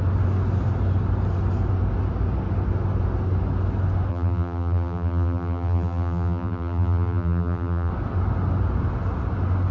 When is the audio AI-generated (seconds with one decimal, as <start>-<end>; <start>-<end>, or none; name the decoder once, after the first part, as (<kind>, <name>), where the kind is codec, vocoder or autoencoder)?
4.1-7.9 (vocoder, BigVGAN v2)